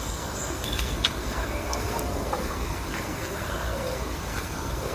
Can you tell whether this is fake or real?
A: fake